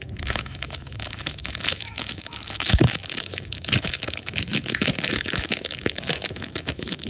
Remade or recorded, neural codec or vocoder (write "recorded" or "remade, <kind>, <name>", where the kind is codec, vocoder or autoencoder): remade, autoencoder, DAC-VAE